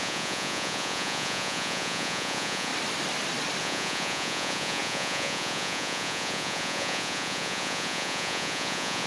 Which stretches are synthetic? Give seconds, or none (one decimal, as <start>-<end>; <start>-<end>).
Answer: 0.0-2.7; 3.6-9.1